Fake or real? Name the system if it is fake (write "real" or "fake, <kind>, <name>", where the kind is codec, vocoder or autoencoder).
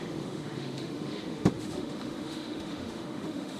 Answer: fake, autoencoder, DAC-VAE